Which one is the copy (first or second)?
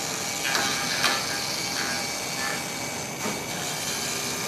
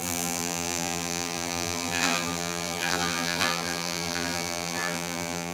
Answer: second